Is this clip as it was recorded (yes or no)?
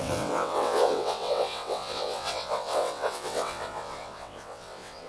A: no